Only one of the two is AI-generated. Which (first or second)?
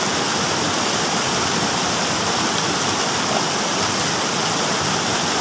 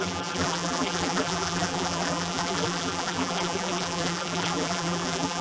second